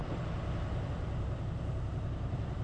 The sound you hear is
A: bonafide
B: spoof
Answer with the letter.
B